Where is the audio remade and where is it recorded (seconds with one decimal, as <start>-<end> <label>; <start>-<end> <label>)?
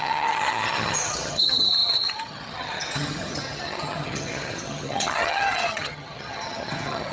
0.0-7.1 remade